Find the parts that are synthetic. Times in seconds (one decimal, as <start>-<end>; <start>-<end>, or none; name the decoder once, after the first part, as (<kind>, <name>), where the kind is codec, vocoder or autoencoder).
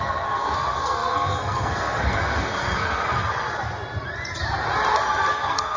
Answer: 0.0-3.4 (codec, SNAC); 5.3-5.8